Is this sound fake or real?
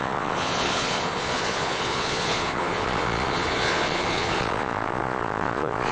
fake